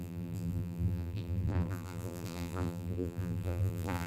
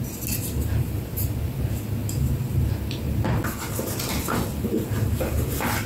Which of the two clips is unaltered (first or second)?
second